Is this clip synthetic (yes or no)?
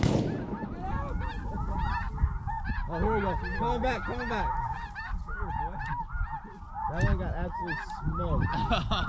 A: no